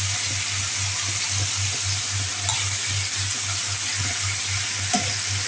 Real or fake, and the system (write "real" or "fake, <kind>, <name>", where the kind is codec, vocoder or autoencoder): real